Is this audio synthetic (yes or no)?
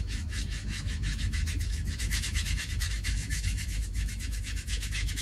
yes